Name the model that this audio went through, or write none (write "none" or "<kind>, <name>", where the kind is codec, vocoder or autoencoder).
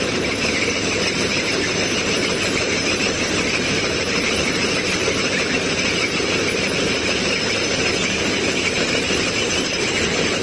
vocoder, BigVGAN v2